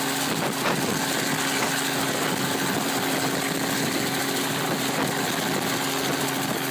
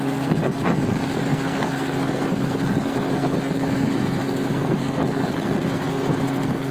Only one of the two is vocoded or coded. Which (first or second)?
second